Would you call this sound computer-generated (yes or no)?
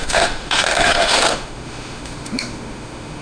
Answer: yes